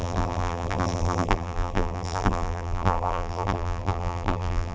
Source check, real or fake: fake